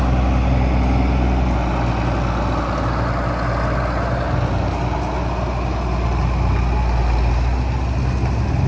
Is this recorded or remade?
recorded